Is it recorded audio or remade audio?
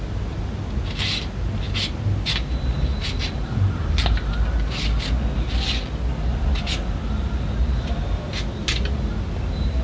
recorded